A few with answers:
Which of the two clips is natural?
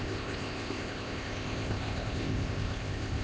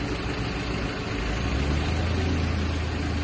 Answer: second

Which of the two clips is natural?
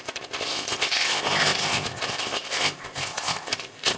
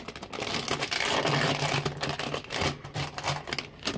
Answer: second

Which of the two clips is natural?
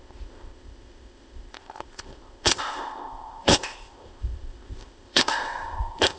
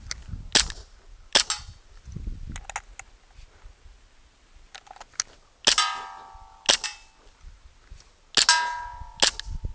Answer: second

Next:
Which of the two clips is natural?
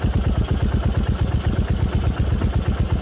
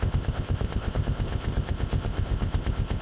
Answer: first